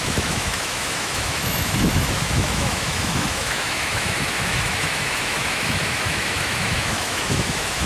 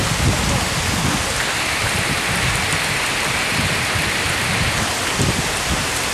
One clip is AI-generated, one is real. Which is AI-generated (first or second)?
first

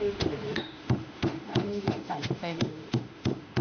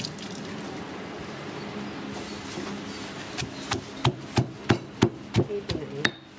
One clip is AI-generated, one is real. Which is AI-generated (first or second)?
first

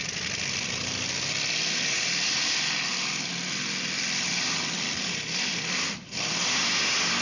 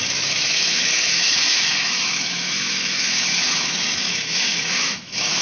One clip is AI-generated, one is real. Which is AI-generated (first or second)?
second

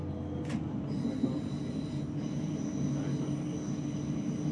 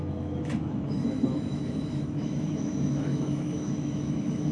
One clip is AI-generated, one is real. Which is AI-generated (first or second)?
second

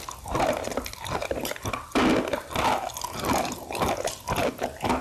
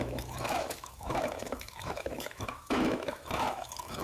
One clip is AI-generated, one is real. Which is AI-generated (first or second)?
second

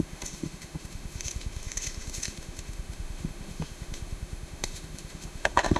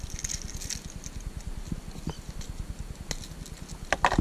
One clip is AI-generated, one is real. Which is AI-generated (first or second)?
first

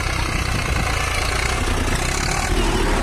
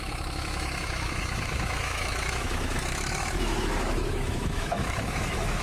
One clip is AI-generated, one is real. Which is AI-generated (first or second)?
second